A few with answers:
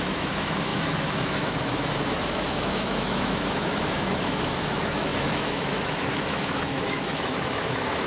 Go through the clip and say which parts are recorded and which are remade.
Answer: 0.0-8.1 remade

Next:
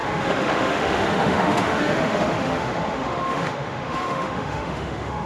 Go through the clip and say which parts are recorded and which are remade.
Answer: 0.0-5.3 remade

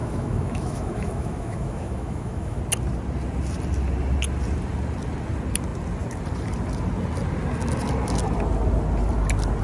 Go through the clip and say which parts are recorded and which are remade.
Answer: 0.0-2.6 remade; 2.6-9.6 recorded

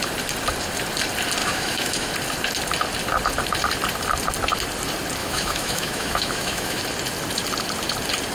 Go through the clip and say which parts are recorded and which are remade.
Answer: 0.0-1.4 recorded; 1.4-2.1 remade; 2.1-5.2 recorded; 5.2-6.8 remade; 6.8-8.3 recorded

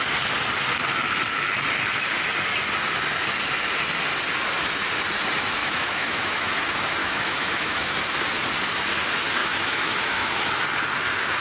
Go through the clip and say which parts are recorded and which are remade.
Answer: 0.0-5.6 recorded; 5.6-6.5 remade; 6.5-7.0 recorded; 7.0-7.9 remade; 7.9-9.4 recorded; 9.4-10.3 remade; 10.3-11.4 recorded